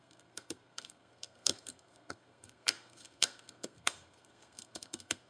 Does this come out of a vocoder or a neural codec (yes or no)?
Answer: yes